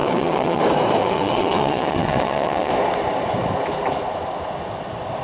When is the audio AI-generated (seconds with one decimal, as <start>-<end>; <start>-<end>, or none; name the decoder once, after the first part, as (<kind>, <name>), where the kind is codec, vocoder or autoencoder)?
0.0-0.6 (vocoder, WaveNeXt); 1.0-2.7